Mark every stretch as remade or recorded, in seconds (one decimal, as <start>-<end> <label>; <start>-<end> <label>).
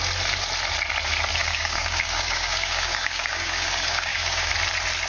0.0-1.4 recorded; 1.4-4.5 remade; 4.5-5.1 recorded